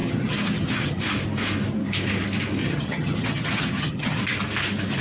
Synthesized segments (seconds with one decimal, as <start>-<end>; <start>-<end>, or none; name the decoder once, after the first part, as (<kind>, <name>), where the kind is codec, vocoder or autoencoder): 0.0-1.0 (vocoder, HiFi-GAN); 2.6-4.2